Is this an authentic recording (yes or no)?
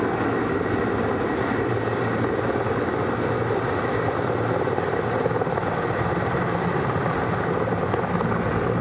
yes